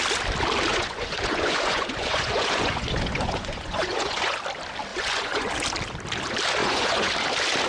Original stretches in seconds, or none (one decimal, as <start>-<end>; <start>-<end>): 0.0-0.7; 4.4-4.9; 5.5-6.6; 7.1-7.7